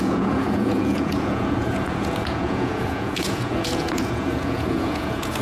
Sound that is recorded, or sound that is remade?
remade